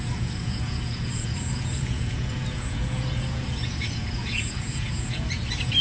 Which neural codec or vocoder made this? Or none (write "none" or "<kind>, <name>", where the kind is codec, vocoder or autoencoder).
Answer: vocoder, Vocos